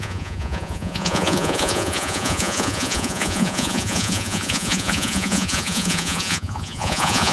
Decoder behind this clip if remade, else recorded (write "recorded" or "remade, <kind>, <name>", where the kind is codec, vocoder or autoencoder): remade, vocoder, Vocos